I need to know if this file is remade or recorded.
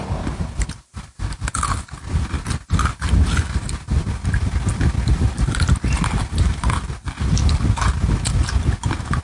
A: recorded